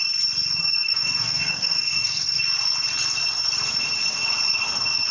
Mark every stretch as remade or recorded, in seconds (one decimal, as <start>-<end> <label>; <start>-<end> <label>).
0.0-0.6 recorded; 0.6-2.4 remade; 2.4-5.1 recorded